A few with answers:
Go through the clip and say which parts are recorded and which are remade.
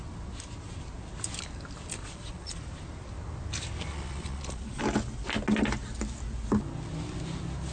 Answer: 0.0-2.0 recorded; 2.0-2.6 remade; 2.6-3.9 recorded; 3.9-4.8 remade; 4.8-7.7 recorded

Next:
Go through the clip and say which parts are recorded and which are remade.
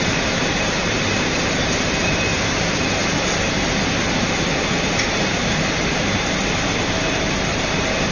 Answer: 0.0-3.0 remade; 3.0-4.1 recorded; 4.1-8.1 remade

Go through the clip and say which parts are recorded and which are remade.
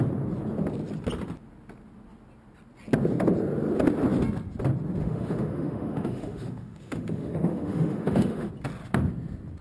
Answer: 0.0-5.0 recorded; 5.0-8.5 remade; 8.5-9.6 recorded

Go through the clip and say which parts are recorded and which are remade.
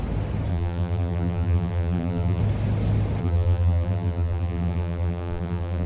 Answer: 0.0-0.5 recorded; 0.5-2.4 remade; 2.4-3.2 recorded; 3.2-5.9 remade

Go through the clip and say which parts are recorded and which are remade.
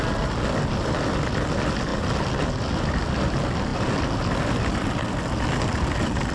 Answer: 0.0-6.3 recorded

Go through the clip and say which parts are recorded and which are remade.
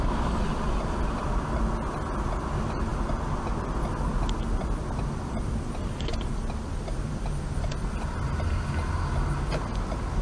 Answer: 0.0-10.2 recorded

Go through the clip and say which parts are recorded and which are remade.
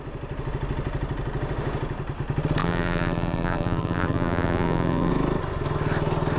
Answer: 0.0-2.6 recorded; 2.6-5.1 remade; 5.1-6.4 recorded